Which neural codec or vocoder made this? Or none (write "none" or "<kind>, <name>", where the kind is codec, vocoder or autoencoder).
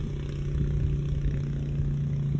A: none